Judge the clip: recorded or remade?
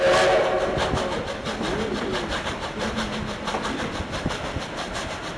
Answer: recorded